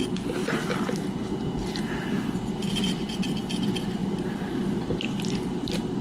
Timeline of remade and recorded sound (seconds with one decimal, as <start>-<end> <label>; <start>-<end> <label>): 0.0-0.4 recorded; 0.4-2.3 remade; 2.3-4.0 recorded; 4.0-5.3 remade; 5.3-6.0 recorded